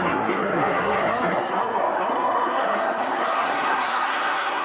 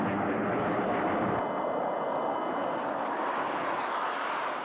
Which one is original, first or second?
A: second